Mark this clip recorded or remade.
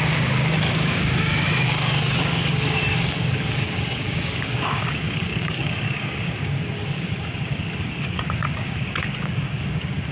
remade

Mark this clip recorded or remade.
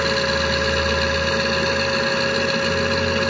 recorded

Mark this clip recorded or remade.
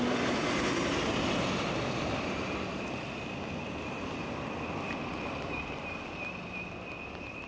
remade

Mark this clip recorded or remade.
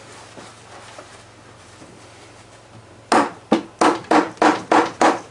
recorded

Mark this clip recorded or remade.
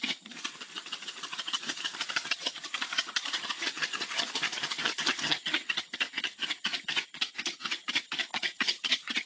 remade